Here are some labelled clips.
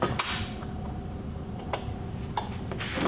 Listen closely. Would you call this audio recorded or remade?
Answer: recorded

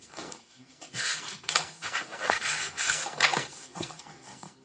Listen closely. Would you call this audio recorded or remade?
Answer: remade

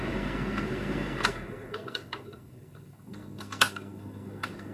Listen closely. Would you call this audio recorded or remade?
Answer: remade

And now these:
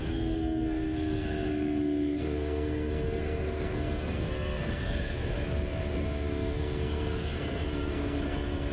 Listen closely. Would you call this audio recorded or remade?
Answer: remade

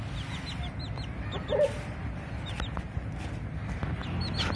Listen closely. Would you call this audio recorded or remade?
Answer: recorded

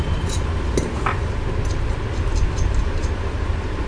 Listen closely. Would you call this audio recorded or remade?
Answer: recorded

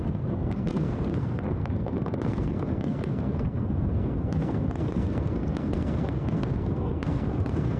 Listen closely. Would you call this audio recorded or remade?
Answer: remade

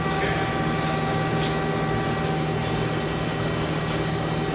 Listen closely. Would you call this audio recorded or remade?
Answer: recorded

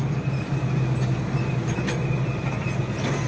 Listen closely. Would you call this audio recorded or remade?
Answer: recorded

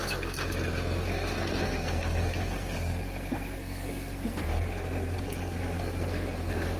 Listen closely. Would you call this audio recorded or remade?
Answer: remade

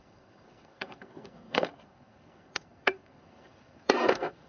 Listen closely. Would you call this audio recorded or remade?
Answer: remade